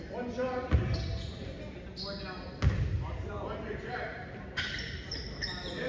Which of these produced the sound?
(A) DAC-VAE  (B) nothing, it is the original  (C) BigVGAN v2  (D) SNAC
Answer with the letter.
B